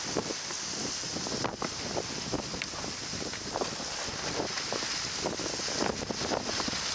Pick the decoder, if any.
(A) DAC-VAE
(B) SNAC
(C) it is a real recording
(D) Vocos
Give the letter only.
C